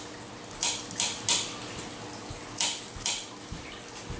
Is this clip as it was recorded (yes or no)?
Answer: yes